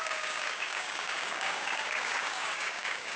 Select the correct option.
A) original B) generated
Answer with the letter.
B